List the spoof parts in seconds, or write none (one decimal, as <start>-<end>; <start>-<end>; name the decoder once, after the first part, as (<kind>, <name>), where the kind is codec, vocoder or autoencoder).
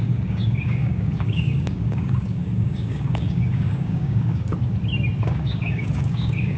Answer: 0.0-4.5 (codec, DAC); 5.2-6.6